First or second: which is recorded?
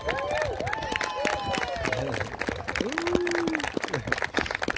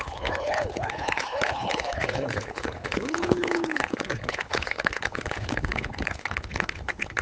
first